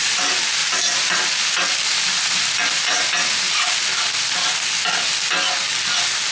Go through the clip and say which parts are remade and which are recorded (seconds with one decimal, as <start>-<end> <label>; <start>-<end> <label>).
0.0-6.3 recorded